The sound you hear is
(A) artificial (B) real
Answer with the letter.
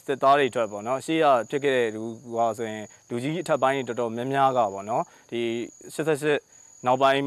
B